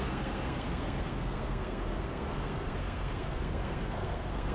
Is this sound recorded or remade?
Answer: remade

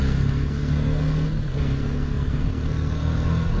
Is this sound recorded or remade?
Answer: remade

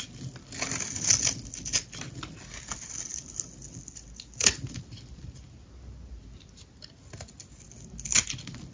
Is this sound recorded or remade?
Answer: recorded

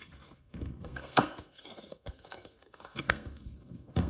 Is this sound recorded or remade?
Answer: remade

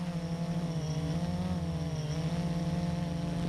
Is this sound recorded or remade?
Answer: recorded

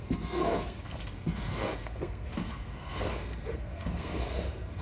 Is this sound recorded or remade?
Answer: remade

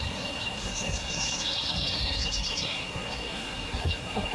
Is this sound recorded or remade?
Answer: remade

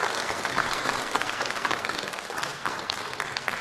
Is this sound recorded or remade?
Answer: remade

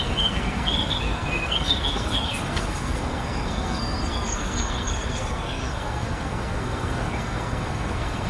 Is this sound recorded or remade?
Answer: remade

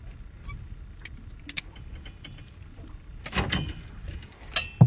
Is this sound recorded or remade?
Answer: recorded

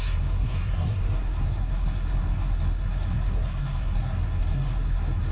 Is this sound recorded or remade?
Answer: remade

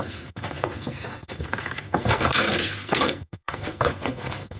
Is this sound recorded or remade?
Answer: remade